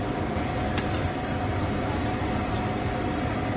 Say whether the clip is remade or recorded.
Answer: recorded